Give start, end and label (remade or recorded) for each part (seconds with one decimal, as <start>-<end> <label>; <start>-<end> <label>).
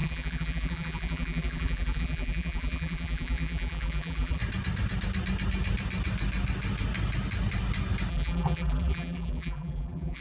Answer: 0.0-4.4 remade; 4.4-8.1 recorded; 8.1-10.2 remade